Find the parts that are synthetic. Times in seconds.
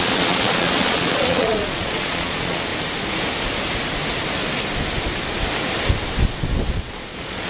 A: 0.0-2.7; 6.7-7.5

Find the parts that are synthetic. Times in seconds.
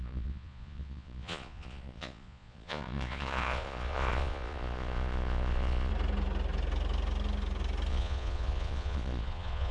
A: 0.0-5.9; 7.9-9.7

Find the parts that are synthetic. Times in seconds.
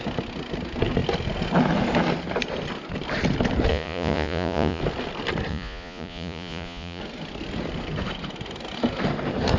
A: 3.7-4.8; 5.5-7.0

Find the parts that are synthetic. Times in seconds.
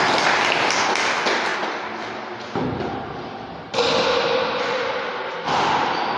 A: none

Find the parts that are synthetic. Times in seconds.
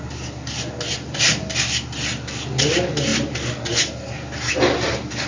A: none